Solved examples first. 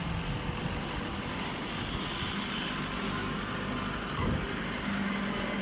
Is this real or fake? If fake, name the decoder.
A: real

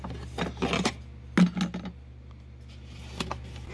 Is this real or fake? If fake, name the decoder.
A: real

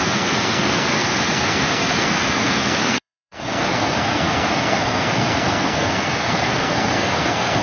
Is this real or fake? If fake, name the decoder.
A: fake, codec, SNAC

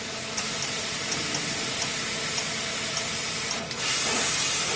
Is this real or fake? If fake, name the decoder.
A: real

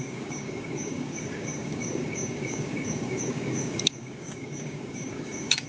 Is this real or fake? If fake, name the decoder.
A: fake, codec, DAC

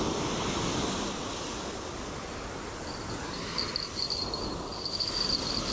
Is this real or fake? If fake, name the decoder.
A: real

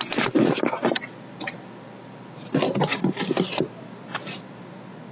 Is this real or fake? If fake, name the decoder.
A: real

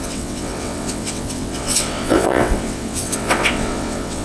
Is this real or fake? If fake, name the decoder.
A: fake, vocoder, WaveNeXt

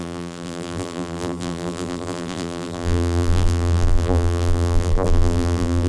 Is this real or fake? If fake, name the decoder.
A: fake, vocoder, BigVGAN v2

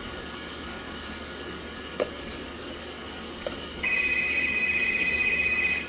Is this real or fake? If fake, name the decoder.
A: fake, codec, DAC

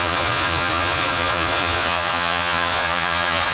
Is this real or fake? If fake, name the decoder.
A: fake, vocoder, Vocos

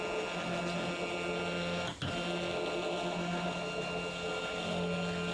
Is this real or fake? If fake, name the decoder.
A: real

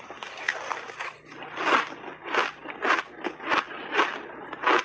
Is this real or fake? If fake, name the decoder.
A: real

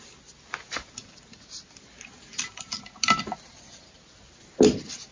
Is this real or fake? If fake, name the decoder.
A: real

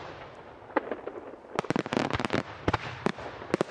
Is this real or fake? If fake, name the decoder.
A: real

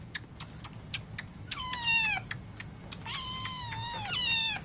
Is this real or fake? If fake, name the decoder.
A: fake, vocoder, BigVGAN v2